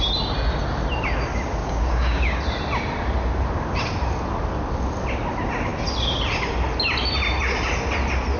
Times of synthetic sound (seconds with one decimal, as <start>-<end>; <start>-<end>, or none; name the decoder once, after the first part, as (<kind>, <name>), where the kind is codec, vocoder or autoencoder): 1.6-2.4 (codec, DAC)